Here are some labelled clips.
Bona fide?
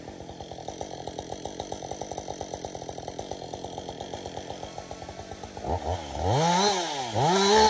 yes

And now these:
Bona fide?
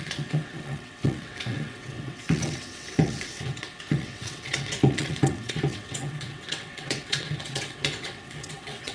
no